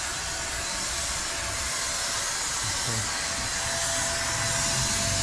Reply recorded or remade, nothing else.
recorded